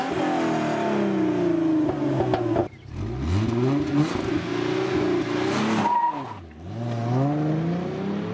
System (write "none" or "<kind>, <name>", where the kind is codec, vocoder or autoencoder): none